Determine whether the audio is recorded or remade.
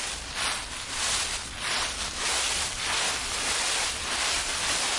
remade